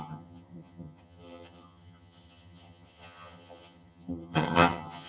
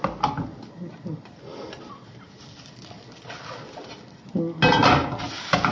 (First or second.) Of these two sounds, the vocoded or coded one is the first